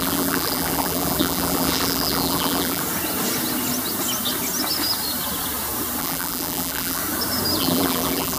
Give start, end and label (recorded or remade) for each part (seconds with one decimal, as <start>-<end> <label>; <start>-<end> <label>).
0.0-2.8 remade; 2.8-6.0 recorded; 6.0-7.0 remade; 7.0-7.6 recorded; 7.6-8.4 remade